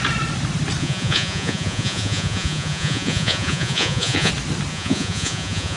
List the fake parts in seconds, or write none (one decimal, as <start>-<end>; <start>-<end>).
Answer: 0.8-4.3; 4.7-5.8